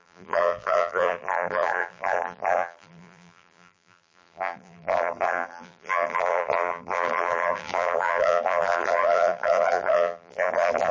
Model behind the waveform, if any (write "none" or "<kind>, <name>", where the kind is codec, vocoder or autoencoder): vocoder, BigVGAN v2